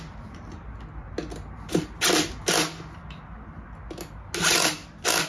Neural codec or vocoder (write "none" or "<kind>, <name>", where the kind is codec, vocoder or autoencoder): none